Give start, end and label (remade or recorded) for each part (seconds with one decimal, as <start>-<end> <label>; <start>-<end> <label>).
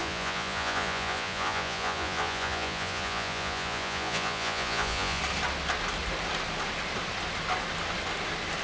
0.0-5.2 remade; 5.2-8.6 recorded